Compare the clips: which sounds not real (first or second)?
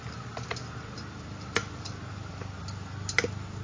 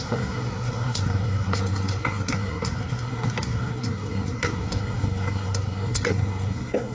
second